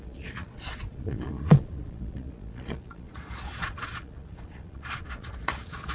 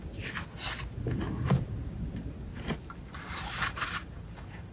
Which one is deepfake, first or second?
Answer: first